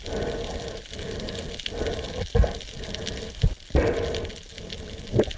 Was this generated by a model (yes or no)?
no